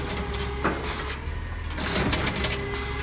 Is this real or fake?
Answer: real